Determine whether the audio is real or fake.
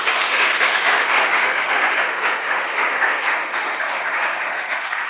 fake